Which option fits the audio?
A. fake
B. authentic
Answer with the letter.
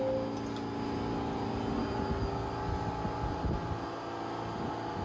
B